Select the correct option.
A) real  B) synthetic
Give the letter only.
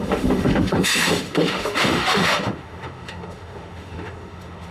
B